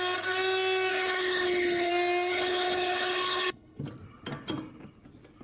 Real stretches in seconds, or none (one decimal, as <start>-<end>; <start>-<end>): 0.0-0.9; 1.9-2.3; 3.8-5.4